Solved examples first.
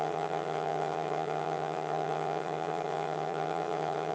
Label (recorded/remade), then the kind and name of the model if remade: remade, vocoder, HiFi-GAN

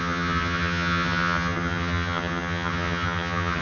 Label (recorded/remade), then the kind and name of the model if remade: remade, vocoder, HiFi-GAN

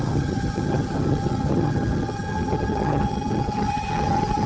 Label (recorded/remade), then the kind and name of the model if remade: remade, vocoder, HiFi-GAN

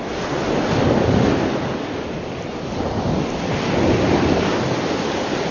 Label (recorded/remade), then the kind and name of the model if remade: recorded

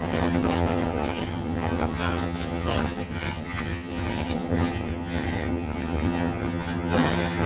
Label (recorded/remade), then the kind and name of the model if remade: remade, vocoder, HiFi-GAN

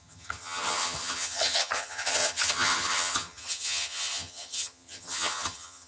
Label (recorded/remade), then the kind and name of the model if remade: remade, vocoder, HiFi-GAN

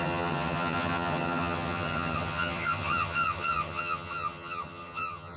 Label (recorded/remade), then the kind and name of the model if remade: remade, vocoder, HiFi-GAN